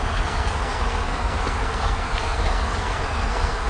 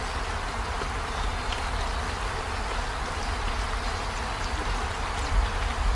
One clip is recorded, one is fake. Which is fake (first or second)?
first